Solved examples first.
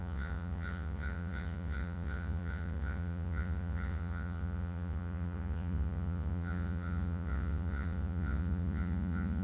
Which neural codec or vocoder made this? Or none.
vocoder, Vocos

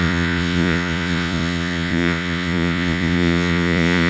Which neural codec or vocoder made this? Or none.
vocoder, Vocos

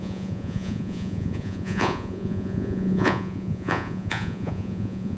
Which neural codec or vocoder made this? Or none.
vocoder, Vocos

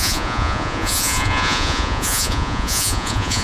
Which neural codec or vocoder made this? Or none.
vocoder, Vocos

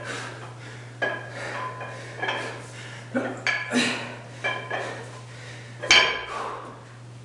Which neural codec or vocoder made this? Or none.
none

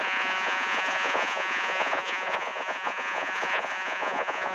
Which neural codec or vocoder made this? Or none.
vocoder, Vocos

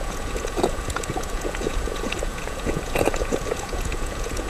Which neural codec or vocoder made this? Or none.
vocoder, Vocos